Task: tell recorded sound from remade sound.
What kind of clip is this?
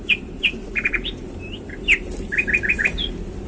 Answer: remade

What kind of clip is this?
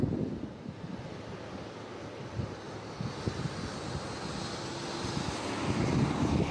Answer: recorded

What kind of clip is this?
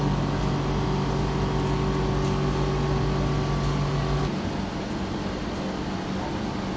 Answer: recorded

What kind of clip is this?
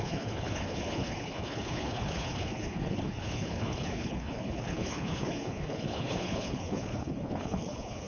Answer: remade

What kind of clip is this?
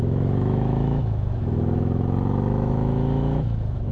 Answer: remade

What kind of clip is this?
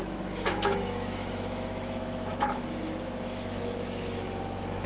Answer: remade